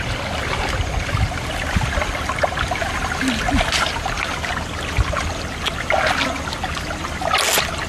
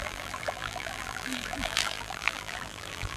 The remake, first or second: second